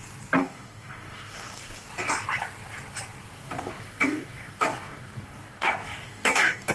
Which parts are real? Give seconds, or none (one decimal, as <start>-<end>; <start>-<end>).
0.0-0.4; 1.9-3.3